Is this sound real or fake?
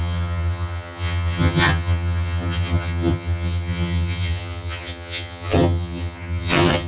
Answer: fake